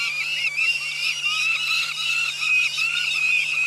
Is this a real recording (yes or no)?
no